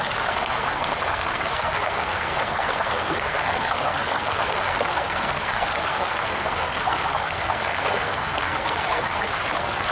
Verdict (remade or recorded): remade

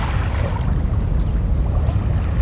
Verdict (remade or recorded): recorded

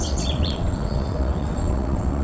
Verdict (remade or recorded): remade